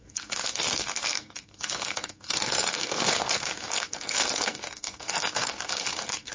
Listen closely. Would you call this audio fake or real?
fake